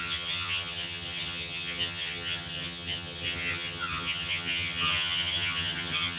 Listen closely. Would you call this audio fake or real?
fake